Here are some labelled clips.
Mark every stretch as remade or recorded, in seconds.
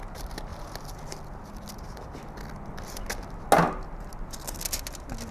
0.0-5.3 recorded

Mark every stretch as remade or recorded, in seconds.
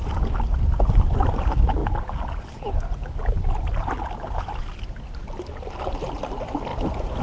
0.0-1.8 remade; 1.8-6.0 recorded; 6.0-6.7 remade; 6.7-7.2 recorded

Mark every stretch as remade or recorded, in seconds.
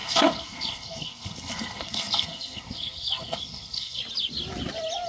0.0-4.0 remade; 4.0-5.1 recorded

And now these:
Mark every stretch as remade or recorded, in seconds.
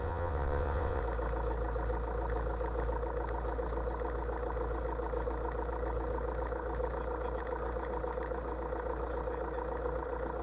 0.0-1.0 remade; 1.0-10.4 recorded